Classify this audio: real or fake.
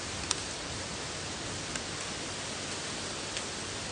real